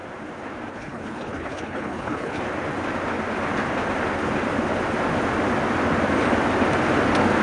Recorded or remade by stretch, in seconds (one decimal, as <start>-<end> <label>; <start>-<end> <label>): 0.0-0.7 recorded; 0.7-2.4 remade; 2.4-7.4 recorded